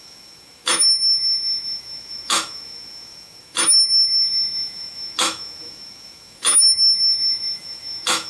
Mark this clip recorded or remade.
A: remade